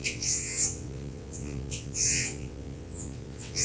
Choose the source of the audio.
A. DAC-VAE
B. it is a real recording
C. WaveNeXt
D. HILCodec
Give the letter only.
C